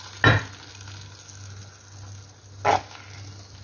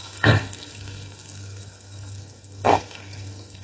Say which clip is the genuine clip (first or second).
first